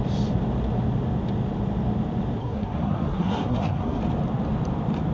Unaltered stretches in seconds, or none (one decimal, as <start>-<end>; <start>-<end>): 0.0-2.4; 4.0-5.1